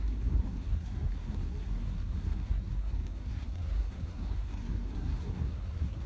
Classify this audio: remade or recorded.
remade